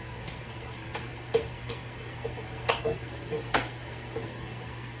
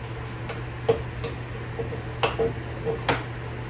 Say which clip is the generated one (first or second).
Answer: first